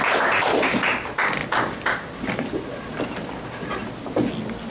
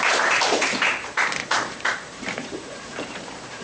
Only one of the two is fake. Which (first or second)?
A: second